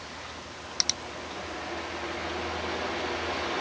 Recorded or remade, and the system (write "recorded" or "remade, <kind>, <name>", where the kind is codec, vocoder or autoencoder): recorded